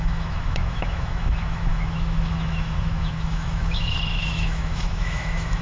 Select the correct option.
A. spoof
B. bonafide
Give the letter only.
A